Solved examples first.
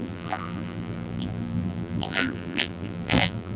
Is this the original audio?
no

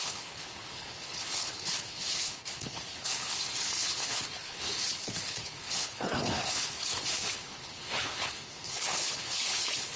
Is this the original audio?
no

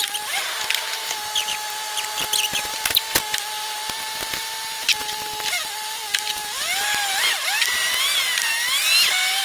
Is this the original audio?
yes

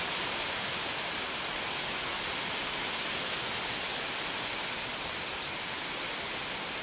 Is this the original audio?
yes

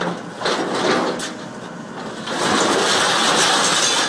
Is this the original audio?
yes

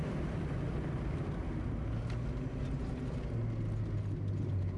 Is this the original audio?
yes